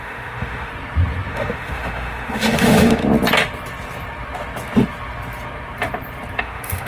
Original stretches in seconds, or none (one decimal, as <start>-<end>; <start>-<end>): 0.7-1.3; 3.0-6.4